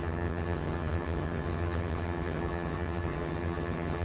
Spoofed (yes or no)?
yes